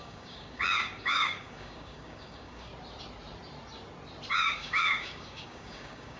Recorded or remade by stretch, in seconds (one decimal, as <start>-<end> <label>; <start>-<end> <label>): 0.0-2.7 remade; 2.7-4.3 recorded; 4.3-6.2 remade